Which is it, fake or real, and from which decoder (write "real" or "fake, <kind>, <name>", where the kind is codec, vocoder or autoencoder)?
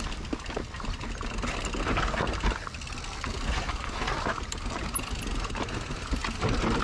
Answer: real